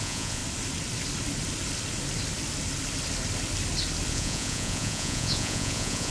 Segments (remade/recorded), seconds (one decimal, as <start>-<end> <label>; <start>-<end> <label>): 0.0-0.4 remade; 0.4-4.1 recorded; 4.1-6.1 remade